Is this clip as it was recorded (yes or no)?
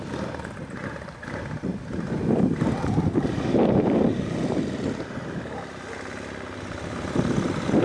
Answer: yes